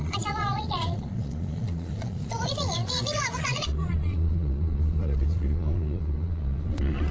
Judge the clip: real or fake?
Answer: fake